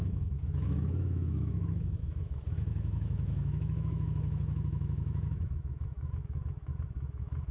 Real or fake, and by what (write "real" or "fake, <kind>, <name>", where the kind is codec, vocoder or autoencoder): fake, autoencoder, DAC-VAE